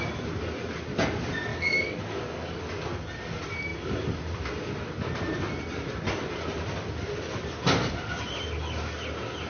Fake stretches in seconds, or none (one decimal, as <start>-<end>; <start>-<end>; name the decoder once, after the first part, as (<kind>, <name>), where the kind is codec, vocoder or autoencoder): 1.5-2.6 (codec, DAC)